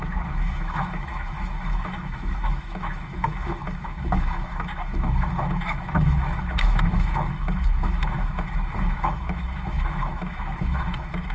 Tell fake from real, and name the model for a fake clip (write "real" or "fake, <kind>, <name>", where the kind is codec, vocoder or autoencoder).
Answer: fake, autoencoder, DAC-VAE